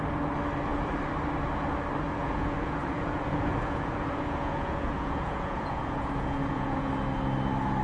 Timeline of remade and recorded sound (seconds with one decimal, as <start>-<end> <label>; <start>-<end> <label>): 0.0-2.2 recorded; 2.2-6.9 remade; 6.9-7.8 recorded

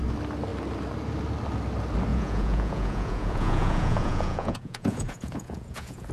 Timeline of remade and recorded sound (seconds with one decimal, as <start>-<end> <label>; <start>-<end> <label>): 0.0-2.1 recorded; 2.1-6.1 remade